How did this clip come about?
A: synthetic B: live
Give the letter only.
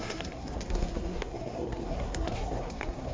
A